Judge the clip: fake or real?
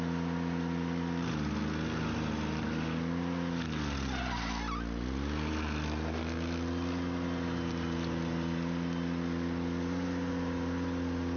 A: real